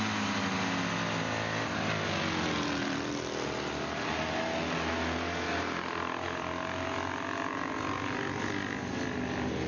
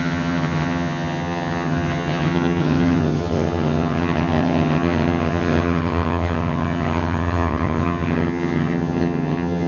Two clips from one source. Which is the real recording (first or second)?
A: first